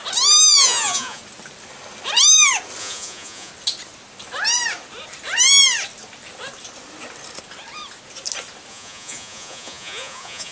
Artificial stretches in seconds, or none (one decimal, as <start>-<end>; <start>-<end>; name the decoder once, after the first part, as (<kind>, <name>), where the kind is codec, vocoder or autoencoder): 0.5-1.2 (vocoder, Vocos); 2.8-3.5; 8.7-10.5

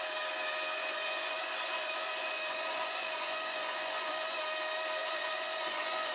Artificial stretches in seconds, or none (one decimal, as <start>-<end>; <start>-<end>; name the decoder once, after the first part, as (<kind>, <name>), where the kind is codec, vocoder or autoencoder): 0.7-4.4 (vocoder, Vocos); 5.0-6.1

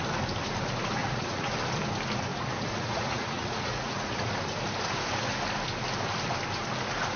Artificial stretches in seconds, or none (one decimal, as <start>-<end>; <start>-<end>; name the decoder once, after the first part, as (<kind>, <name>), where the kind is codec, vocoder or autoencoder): 1.0-1.5 (vocoder, Vocos); 2.3-4.3

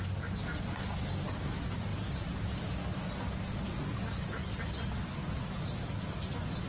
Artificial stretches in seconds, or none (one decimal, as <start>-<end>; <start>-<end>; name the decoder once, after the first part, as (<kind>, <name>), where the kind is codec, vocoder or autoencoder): none

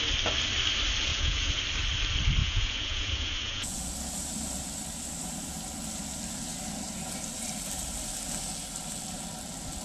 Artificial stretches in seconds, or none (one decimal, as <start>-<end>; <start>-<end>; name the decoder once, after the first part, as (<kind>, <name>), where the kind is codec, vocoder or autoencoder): 1.1-1.6 (vocoder, Vocos); 2.4-3.9

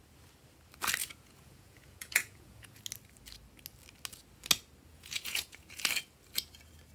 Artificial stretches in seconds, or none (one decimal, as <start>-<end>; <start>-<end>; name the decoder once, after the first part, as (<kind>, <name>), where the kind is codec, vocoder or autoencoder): 1.0-2.8 (vocoder, Vocos); 4.9-5.8